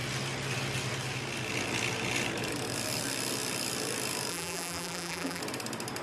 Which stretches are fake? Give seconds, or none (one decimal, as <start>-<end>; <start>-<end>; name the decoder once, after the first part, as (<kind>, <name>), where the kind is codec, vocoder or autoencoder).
4.3-5.4 (vocoder, BigVGAN v2)